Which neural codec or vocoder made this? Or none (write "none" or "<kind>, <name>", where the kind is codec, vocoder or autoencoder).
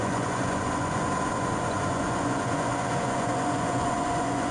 vocoder, Vocos